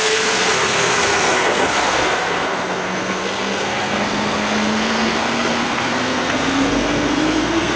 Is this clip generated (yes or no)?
yes